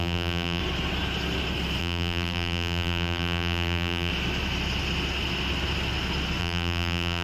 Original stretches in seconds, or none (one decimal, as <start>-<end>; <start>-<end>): 0.6-1.8; 4.1-6.4